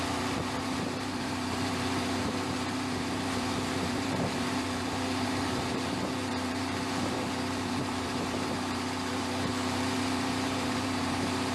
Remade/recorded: remade